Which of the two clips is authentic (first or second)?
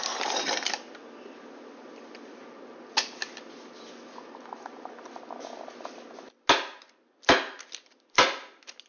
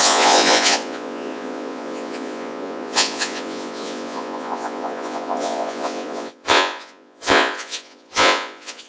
first